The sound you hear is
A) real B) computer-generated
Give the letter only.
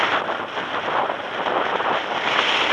A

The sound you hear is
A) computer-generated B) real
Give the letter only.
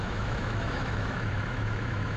A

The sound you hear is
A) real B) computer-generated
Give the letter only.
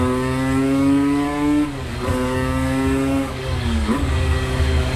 B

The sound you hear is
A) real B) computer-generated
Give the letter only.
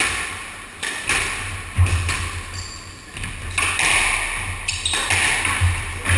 A